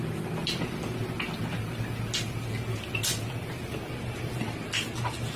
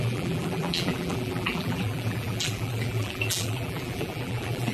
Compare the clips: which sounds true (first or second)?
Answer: first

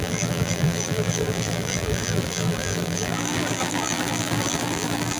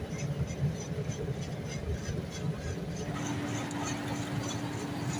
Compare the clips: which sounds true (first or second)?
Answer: second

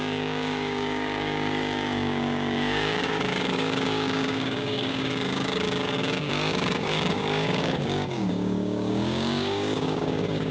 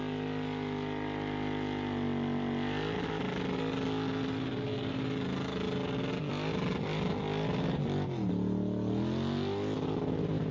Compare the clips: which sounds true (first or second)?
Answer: second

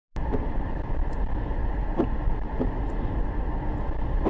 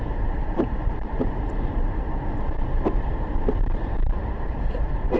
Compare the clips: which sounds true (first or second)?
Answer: first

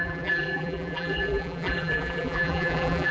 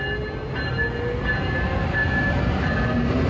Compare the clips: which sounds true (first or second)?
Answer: second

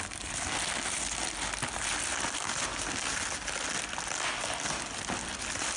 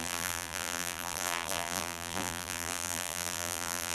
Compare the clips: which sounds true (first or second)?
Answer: first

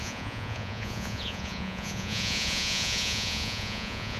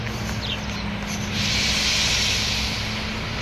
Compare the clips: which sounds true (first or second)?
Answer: second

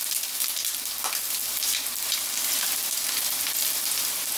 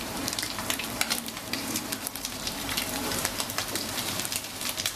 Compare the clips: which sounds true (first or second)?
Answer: first